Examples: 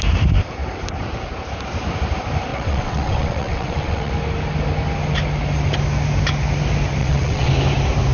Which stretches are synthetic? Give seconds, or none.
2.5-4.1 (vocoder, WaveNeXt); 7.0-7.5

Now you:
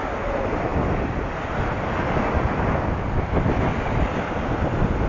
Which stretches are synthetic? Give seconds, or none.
none